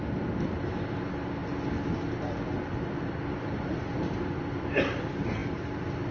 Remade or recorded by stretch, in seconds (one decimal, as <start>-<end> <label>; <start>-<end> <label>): 0.0-6.1 recorded